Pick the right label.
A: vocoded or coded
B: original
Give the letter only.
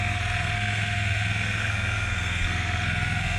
A